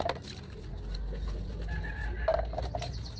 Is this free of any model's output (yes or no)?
yes